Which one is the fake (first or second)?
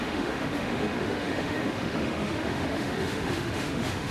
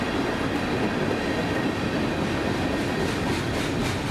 first